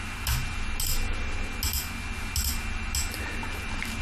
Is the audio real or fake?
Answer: real